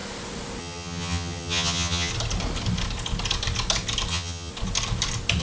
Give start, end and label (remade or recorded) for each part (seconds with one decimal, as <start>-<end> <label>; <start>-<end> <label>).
0.0-0.6 recorded; 0.6-2.1 remade; 2.1-4.1 recorded; 4.1-4.5 remade; 4.5-5.4 recorded